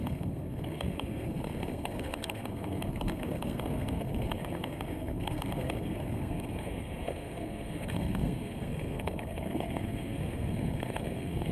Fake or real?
fake